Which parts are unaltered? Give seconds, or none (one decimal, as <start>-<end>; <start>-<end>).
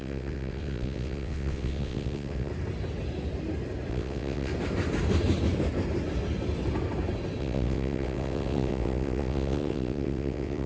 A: 2.5-3.9; 4.5-7.4